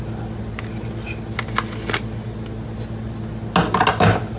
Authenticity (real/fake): real